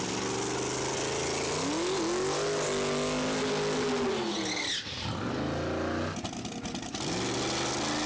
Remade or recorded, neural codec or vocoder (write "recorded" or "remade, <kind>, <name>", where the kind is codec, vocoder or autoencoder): recorded